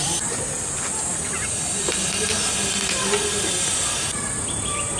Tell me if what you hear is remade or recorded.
recorded